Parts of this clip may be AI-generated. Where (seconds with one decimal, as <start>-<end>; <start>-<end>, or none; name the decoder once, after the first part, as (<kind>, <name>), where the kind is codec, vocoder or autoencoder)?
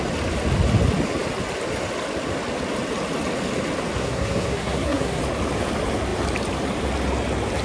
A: 4.0-5.2 (codec, SNAC)